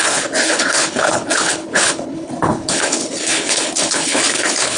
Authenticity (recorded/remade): remade